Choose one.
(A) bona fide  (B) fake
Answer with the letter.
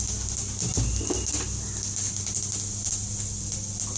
A